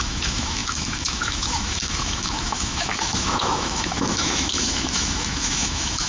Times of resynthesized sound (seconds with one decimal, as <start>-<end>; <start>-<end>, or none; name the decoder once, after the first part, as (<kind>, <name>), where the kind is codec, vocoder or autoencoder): 0.0-6.1 (autoencoder, DAC-VAE)